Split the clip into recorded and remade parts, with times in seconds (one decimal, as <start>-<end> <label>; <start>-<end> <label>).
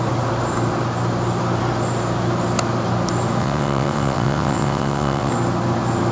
0.0-3.4 recorded; 3.4-5.3 remade; 5.3-6.1 recorded